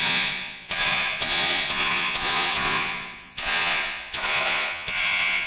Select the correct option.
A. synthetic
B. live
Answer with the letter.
A